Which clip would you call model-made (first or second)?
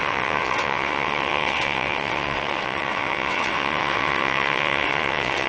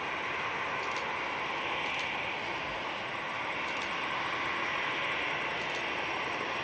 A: first